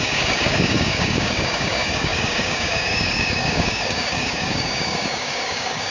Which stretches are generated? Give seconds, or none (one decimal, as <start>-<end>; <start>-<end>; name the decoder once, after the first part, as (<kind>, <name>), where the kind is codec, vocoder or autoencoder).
0.0-5.9 (codec, DAC)